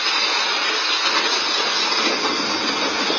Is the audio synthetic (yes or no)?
no